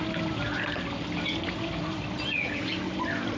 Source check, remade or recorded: recorded